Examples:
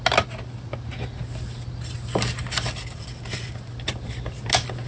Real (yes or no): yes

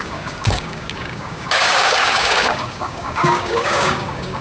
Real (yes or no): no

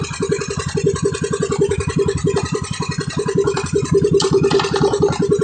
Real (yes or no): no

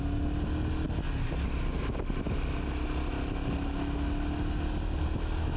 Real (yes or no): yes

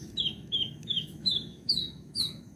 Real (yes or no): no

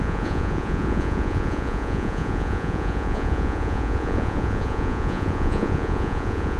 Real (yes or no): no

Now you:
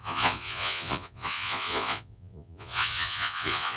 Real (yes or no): no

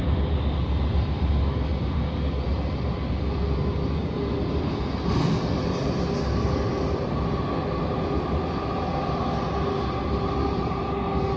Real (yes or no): yes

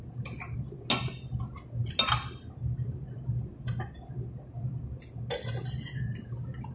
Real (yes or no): yes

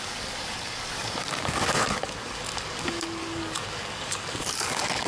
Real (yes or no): no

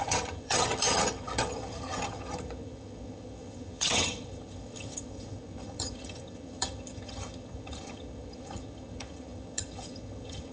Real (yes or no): no